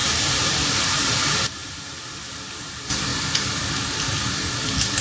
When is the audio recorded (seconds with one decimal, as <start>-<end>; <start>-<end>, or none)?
1.2-1.6; 2.3-5.0